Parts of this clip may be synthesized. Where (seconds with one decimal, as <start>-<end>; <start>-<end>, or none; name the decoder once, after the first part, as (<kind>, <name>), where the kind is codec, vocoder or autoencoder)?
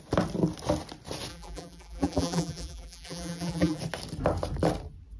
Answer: 1.3-3.8 (vocoder, BigVGAN v2)